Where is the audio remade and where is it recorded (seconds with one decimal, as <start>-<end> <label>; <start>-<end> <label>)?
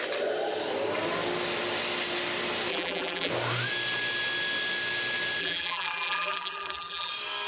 0.0-2.7 recorded; 2.7-3.3 remade; 3.3-5.4 recorded; 5.4-7.1 remade; 7.1-7.5 recorded